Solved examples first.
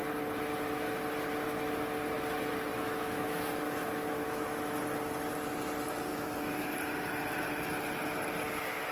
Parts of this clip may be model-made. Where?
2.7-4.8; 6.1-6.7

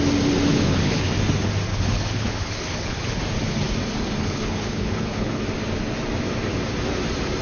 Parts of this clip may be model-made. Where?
0.5-1.1; 1.7-3.2; 4.2-5.4

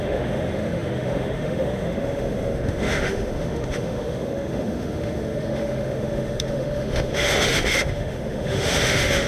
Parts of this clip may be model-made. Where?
0.0-9.3

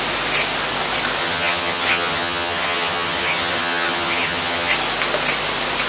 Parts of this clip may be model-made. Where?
1.2-4.7

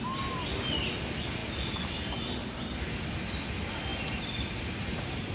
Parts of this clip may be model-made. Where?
none

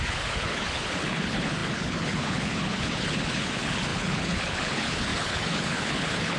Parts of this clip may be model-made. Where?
0.0-6.4

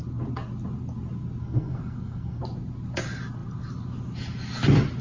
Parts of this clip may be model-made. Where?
1.4-2.4